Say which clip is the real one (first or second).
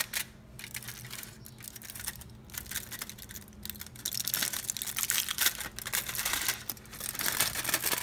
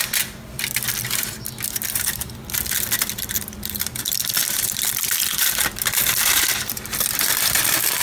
first